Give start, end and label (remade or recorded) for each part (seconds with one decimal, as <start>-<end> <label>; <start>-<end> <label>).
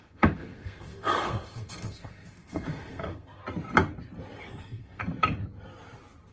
0.0-3.4 remade; 3.4-4.6 recorded; 4.6-5.0 remade; 5.0-6.3 recorded